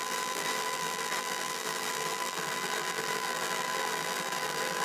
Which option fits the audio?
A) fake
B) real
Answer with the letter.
A